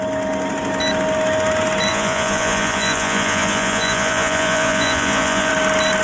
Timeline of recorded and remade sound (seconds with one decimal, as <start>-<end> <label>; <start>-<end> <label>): 0.0-1.9 recorded; 1.9-5.5 remade; 5.5-6.0 recorded